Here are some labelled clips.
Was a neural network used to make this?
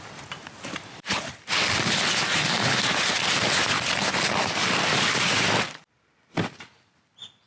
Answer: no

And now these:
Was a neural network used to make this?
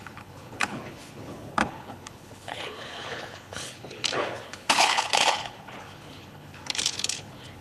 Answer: yes